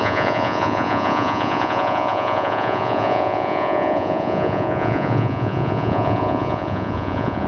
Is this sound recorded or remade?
remade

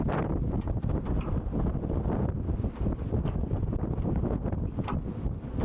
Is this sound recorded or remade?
recorded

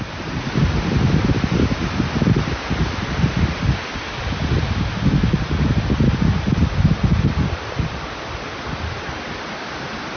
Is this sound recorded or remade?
recorded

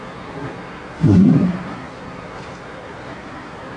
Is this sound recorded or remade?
remade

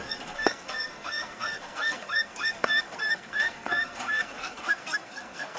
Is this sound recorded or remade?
remade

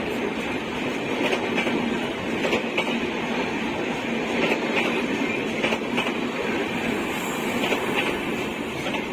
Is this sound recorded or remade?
recorded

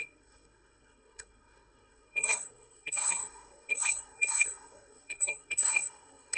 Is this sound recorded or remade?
remade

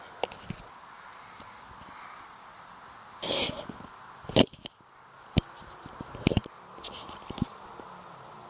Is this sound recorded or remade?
recorded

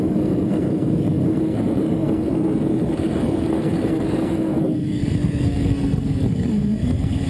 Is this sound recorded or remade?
remade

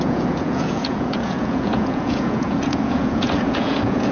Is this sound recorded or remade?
remade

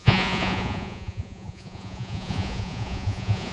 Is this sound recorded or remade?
remade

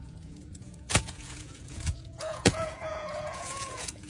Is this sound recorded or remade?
remade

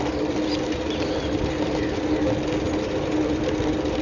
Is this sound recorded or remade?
recorded